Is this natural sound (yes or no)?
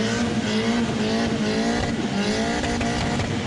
yes